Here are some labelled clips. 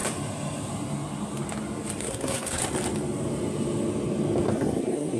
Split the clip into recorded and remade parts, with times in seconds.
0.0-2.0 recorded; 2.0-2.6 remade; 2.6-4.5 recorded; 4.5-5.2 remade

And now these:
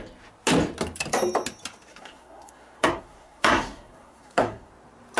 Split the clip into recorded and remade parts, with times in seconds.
0.0-1.9 recorded; 1.9-4.7 remade; 4.7-5.2 recorded

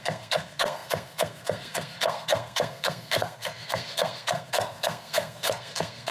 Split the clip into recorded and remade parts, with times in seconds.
0.0-6.1 remade

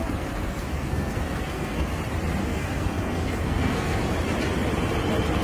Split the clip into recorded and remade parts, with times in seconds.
0.0-2.0 remade; 2.0-2.4 recorded; 2.4-4.0 remade; 4.0-5.4 recorded